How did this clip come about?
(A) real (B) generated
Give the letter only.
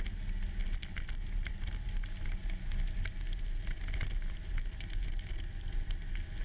A